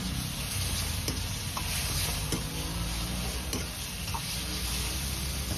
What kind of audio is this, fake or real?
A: real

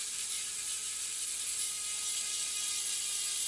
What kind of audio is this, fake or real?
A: real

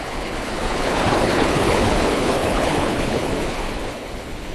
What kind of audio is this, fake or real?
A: fake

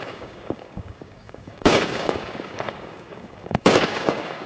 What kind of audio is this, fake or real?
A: fake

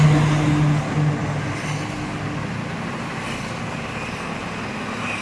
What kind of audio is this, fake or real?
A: real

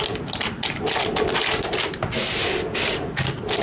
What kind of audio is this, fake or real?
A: real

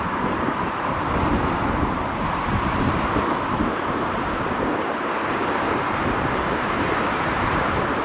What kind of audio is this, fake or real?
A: fake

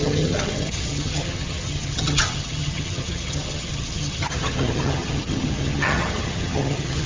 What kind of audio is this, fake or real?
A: fake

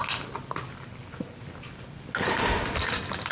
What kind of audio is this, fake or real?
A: real